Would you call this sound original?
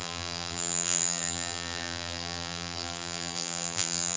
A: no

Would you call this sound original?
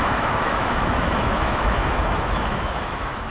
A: no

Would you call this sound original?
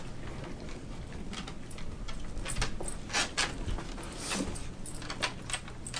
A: yes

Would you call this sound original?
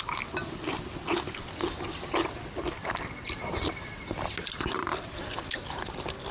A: yes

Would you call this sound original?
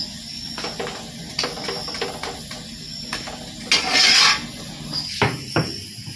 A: yes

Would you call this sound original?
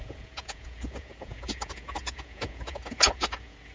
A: no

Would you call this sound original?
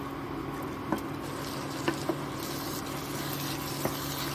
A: yes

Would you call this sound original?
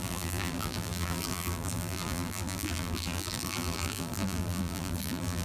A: no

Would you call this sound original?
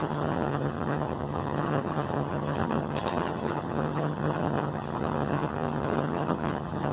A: no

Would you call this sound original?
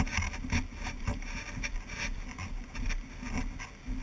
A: yes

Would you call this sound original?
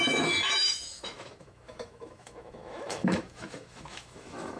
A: no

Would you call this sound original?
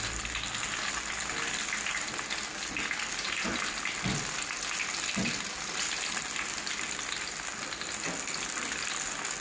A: yes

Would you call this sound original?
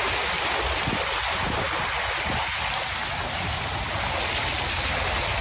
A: yes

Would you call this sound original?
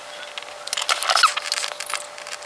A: yes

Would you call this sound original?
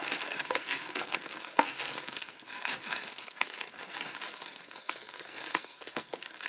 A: no